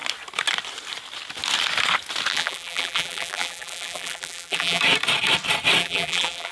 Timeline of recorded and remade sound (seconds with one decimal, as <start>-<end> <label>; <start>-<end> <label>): 0.0-2.3 recorded; 2.3-4.8 remade; 4.8-5.8 recorded; 5.8-6.5 remade